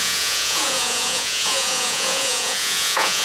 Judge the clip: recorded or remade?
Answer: remade